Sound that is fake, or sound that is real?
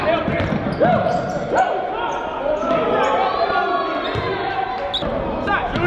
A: real